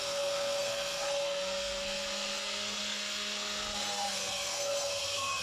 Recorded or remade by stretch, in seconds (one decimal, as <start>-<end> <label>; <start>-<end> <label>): 0.0-5.4 remade